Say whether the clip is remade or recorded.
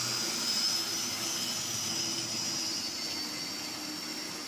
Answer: recorded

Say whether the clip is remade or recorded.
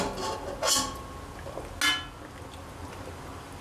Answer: recorded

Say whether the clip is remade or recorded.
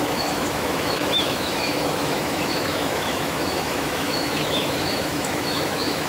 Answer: remade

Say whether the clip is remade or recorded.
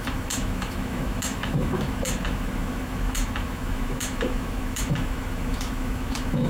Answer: remade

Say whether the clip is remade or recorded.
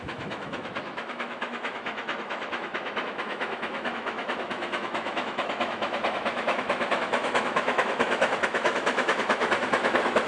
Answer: remade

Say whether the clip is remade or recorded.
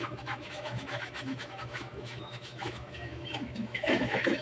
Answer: remade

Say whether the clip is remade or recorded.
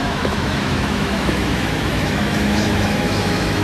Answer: remade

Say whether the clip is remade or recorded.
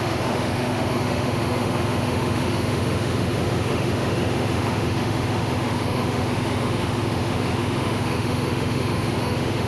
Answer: remade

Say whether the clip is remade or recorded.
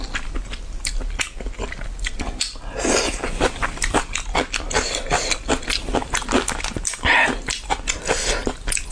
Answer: recorded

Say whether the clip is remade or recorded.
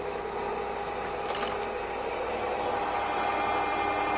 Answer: recorded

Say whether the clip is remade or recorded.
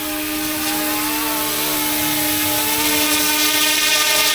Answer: recorded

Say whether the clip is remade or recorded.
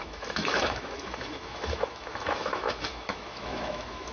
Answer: remade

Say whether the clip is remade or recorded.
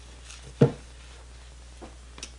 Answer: recorded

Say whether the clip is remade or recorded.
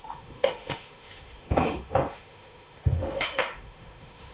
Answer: remade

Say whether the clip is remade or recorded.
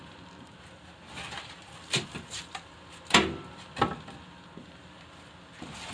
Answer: recorded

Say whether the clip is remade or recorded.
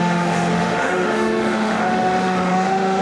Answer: remade